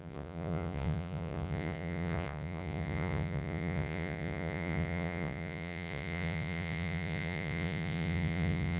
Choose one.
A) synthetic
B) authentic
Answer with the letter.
A